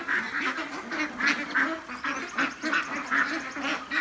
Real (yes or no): yes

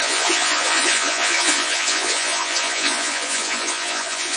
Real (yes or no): no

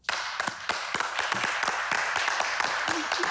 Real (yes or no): yes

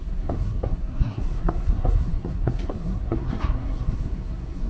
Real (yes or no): no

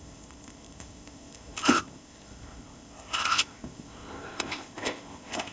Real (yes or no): no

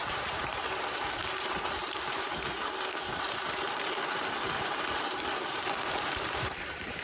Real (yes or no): no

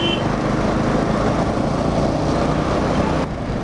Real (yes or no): yes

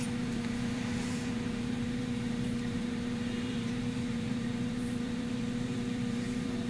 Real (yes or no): no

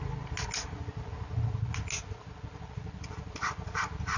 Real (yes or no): yes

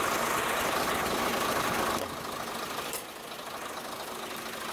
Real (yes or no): yes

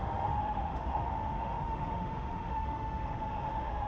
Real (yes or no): no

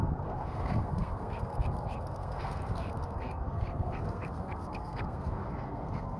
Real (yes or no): no